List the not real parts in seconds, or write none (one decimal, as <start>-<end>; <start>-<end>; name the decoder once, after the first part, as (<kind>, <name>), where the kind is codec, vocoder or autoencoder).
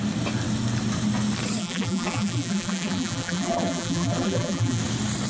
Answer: 1.6-4.8 (vocoder, BigVGAN v2)